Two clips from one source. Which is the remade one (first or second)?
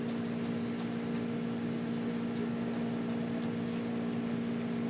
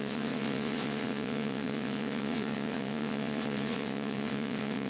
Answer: second